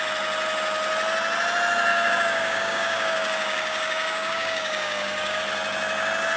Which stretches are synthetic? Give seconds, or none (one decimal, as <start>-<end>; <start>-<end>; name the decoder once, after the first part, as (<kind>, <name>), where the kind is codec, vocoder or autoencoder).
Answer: 1.9-5.4 (codec, DAC)